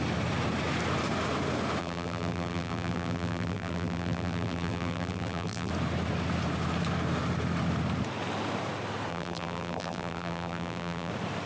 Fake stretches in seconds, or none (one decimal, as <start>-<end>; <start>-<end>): 1.8-5.7; 9.1-11.1